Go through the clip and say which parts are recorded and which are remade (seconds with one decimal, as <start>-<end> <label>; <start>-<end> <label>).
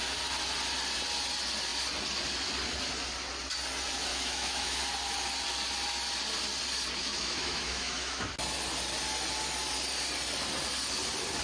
0.0-4.1 recorded; 4.1-4.8 remade; 4.8-7.0 recorded; 7.0-8.3 remade; 8.3-11.4 recorded